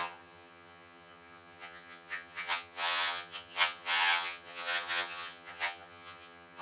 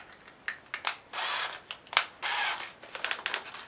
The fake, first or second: first